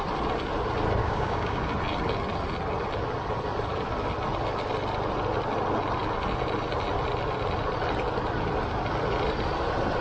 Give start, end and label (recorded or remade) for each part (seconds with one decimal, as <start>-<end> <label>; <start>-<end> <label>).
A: 0.0-1.0 recorded; 1.0-1.6 remade; 1.6-10.0 recorded

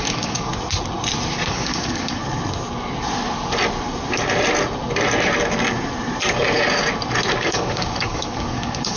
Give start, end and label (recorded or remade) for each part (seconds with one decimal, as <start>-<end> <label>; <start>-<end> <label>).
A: 0.0-0.5 remade; 0.5-1.5 recorded; 1.5-2.2 remade; 2.2-7.4 recorded; 7.4-9.0 remade

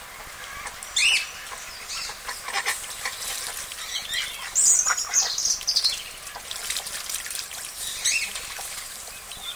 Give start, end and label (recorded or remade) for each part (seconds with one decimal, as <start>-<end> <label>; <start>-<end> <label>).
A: 0.0-9.6 recorded

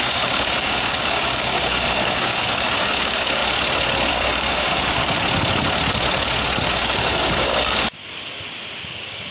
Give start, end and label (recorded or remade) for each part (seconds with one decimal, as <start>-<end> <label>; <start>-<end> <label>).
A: 0.0-3.4 remade; 3.4-4.1 recorded; 4.1-5.0 remade; 5.0-6.7 recorded; 6.7-8.0 remade; 8.0-8.8 recorded; 8.8-9.3 remade

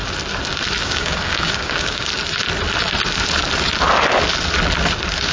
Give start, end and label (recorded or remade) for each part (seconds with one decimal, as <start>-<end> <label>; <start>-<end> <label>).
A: 0.0-0.8 recorded; 0.8-2.1 remade; 2.1-5.3 recorded

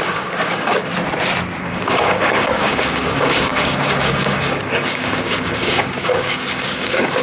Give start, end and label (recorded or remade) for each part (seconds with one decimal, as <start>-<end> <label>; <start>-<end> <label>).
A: 0.0-0.9 remade; 0.9-1.6 recorded; 1.6-7.2 remade